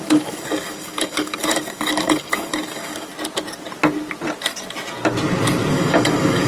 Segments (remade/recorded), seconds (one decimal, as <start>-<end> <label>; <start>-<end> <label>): 0.0-3.1 remade; 3.1-5.7 recorded; 5.7-6.5 remade